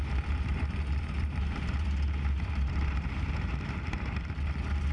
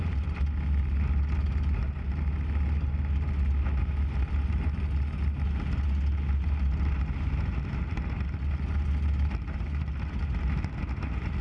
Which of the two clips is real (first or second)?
second